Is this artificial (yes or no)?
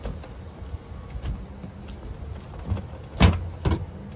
no